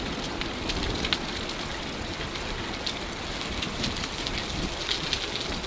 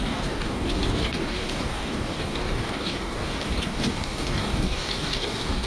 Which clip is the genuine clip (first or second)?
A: first